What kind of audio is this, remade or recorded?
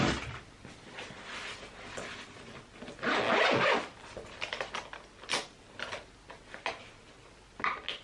recorded